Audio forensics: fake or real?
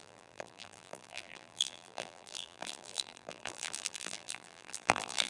fake